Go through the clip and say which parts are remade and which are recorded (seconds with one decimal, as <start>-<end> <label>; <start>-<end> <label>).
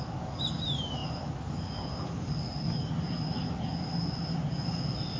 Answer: 0.0-5.2 recorded